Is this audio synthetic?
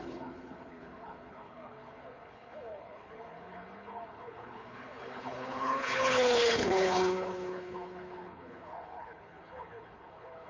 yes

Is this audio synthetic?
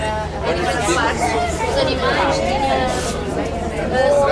no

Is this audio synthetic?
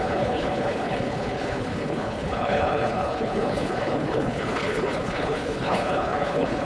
yes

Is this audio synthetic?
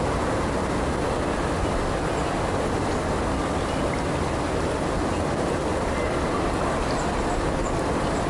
no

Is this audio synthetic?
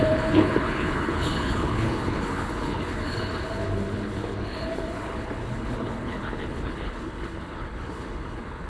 yes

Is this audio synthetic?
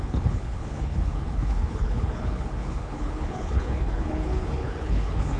yes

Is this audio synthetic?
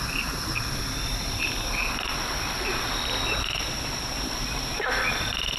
no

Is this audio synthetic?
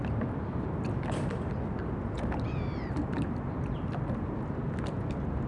no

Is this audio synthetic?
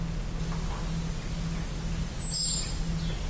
no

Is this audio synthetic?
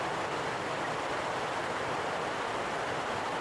no